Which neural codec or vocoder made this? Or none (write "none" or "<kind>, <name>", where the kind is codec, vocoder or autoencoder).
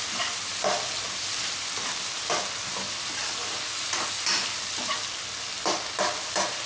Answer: none